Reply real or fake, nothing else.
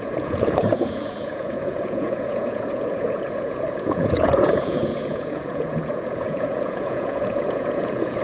fake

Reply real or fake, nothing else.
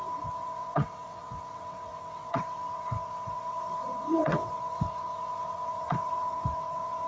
fake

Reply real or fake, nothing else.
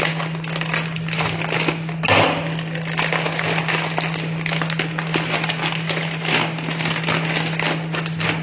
real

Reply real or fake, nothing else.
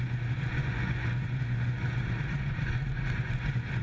fake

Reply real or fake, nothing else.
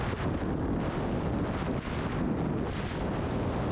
real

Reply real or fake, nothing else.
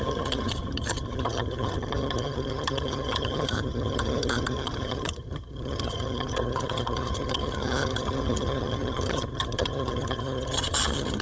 fake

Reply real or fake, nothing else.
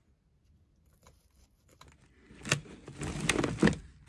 real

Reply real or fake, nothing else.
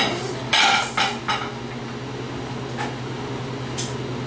real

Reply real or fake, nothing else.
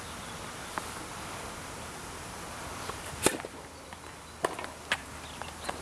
real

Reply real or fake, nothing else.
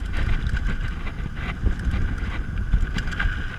real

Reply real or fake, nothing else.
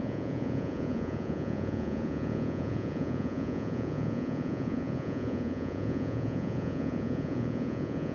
fake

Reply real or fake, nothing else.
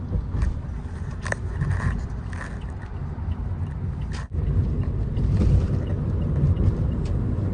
real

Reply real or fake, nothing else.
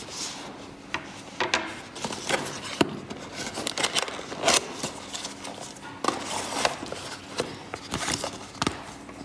real